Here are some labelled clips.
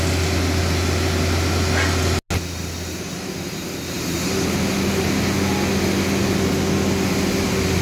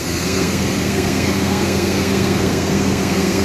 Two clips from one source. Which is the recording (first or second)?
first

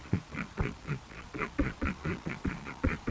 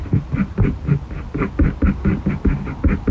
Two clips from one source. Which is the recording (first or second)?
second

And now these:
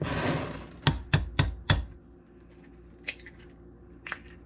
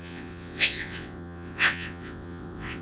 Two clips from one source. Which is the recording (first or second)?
first